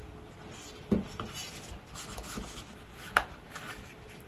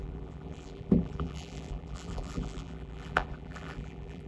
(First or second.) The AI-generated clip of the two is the second